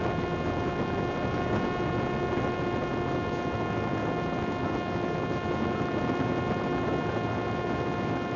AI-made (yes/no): no